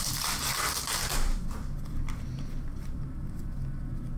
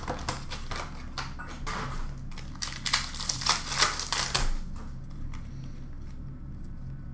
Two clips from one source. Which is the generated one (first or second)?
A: first